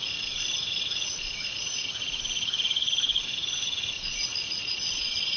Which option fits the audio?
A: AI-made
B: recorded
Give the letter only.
A